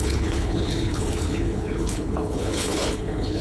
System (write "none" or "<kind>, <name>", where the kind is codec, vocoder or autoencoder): codec, HILCodec